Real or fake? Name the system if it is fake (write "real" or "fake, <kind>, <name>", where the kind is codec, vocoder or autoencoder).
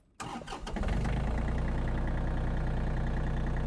real